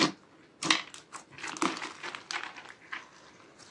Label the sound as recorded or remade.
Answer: recorded